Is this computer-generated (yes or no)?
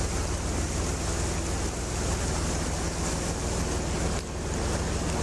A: no